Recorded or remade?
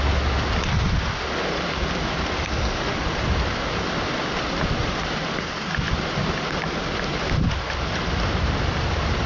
recorded